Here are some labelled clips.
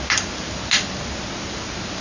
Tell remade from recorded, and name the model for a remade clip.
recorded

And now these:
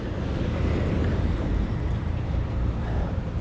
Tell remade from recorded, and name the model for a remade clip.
remade, vocoder, BigVGAN v2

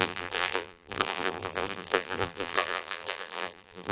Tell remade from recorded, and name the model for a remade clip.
remade, vocoder, BigVGAN v2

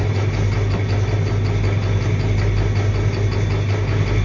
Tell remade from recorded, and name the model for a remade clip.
recorded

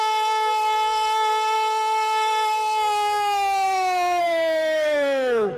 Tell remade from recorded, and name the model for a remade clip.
remade, codec, SNAC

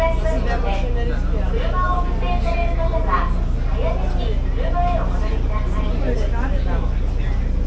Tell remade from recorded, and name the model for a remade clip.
recorded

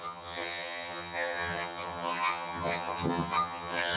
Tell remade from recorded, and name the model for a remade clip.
remade, vocoder, HiFi-GAN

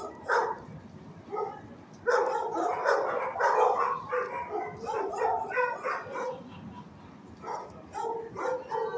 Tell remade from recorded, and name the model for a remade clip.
recorded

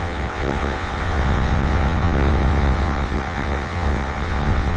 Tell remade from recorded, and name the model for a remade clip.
remade, vocoder, WaveNeXt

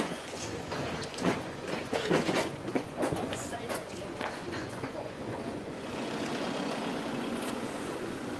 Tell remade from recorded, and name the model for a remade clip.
remade, vocoder, Vocos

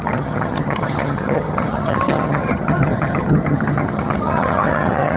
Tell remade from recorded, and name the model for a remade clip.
remade, vocoder, HiFi-GAN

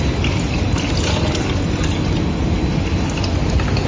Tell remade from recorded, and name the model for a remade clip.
recorded